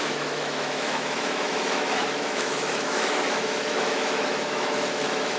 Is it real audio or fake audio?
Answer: fake